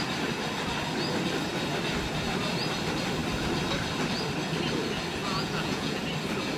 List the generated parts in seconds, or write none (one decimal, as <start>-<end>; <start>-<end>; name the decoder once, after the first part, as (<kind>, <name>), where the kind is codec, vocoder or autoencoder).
5.2-6.0 (vocoder, Vocos)